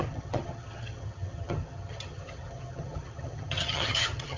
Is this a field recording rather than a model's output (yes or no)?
no